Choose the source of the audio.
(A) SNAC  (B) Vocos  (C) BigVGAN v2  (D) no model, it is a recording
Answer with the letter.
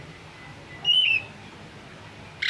D